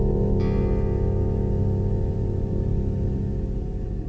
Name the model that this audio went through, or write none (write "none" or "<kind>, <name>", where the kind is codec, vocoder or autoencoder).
none